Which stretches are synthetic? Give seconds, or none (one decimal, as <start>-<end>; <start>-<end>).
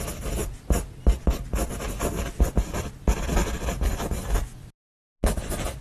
none